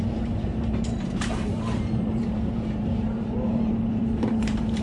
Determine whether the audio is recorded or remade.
remade